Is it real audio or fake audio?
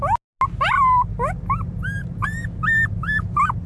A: real